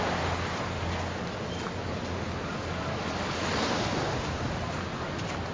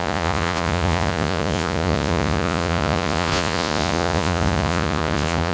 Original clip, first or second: first